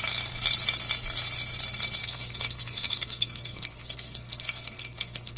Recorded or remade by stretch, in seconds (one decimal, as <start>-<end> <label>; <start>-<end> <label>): 0.0-2.0 recorded; 2.0-5.4 remade